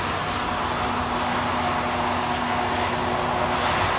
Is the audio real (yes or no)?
yes